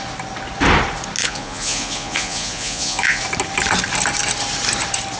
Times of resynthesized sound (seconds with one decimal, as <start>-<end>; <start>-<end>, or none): 1.2-3.2